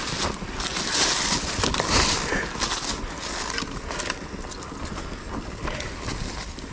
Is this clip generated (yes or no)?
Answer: no